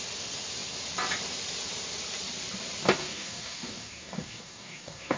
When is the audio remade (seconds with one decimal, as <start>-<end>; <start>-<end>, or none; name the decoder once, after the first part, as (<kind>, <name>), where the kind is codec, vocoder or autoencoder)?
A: 3.0-5.2 (codec, DAC)